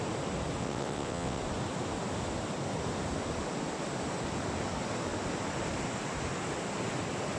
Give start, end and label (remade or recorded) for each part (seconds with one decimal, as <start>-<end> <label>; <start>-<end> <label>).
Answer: 0.0-0.6 recorded; 0.6-1.4 remade; 1.4-7.4 recorded